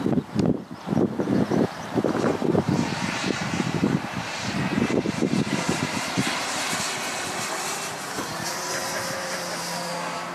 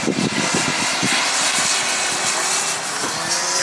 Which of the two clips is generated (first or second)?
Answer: first